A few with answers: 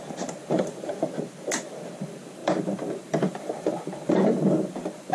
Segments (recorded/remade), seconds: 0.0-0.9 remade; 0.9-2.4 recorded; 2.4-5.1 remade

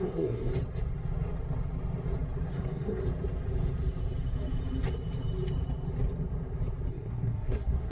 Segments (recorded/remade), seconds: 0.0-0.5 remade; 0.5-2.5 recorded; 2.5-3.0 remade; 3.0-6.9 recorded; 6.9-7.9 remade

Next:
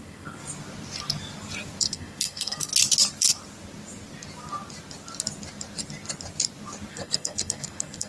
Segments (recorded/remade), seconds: 0.0-0.4 remade; 0.4-1.8 recorded; 1.8-2.7 remade; 2.7-6.9 recorded; 6.9-8.1 remade

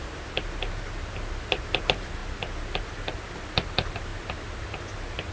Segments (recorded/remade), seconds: 0.0-5.3 recorded